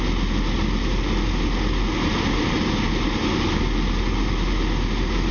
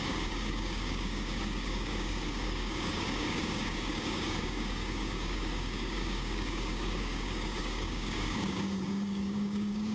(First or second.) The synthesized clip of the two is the second